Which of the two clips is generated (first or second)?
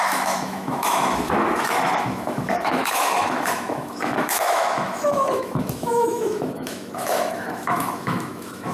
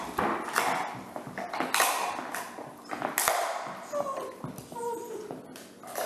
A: first